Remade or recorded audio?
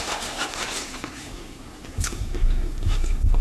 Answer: remade